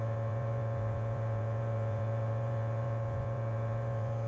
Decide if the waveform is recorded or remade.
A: remade